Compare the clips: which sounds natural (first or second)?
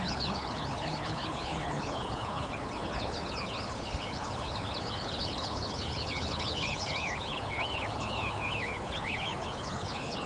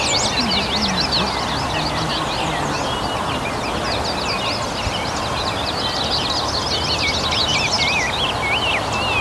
second